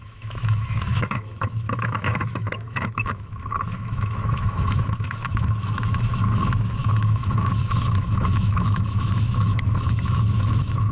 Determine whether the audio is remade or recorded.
remade